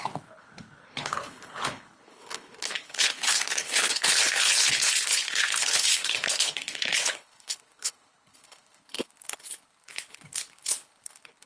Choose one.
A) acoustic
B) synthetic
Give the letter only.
B